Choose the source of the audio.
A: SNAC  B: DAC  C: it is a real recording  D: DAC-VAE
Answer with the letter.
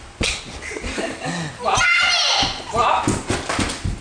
C